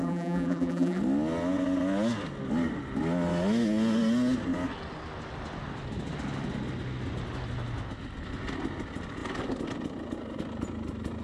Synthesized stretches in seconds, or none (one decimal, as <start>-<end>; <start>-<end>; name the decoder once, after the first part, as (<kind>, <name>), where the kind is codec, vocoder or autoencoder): 0.0-1.0 (vocoder, BigVGAN v2)